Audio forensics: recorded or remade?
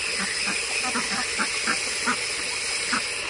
recorded